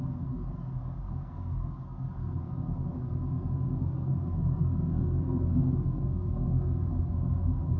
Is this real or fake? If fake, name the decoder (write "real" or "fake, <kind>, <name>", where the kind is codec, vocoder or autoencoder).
fake, codec, SNAC